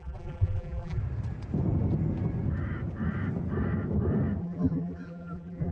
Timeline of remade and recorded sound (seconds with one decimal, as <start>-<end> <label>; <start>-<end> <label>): 0.0-1.0 remade; 1.0-4.4 recorded; 4.4-5.7 remade